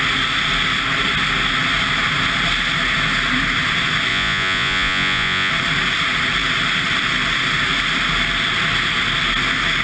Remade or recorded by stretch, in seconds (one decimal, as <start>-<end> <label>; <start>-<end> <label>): 0.0-4.1 recorded; 4.1-5.5 remade; 5.5-9.8 recorded